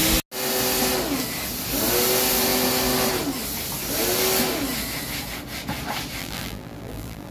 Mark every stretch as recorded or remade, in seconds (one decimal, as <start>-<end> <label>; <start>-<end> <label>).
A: 0.0-6.2 recorded; 6.2-7.3 remade